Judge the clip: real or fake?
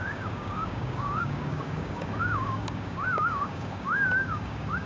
fake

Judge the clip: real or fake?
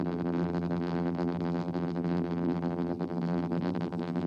fake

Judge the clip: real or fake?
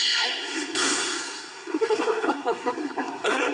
fake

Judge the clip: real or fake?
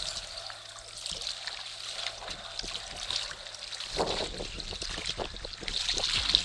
real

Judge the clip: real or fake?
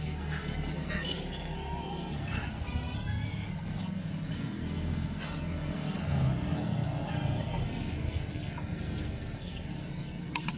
fake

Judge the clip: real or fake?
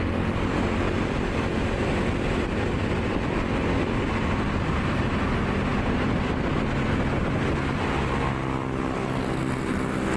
real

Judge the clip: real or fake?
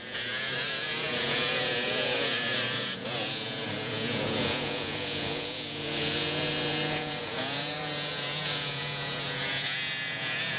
fake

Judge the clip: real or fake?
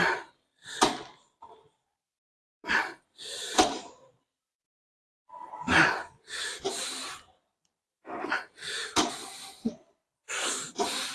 fake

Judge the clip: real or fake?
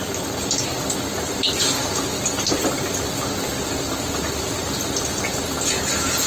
real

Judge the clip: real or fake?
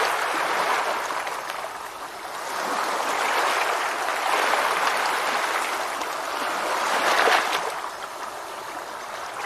real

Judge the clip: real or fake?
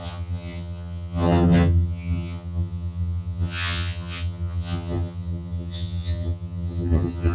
fake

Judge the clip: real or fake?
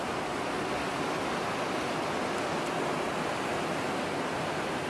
real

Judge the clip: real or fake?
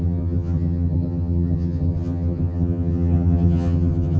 fake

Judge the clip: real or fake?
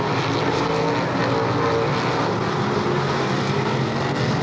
real